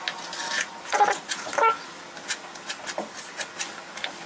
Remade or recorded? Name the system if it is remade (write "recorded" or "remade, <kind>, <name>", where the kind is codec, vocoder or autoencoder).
recorded